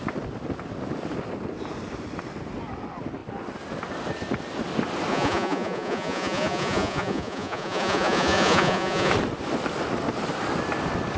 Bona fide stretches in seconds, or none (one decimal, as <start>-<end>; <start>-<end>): 0.0-5.1; 9.1-11.2